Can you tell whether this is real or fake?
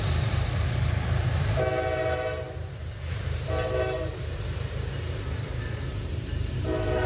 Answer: fake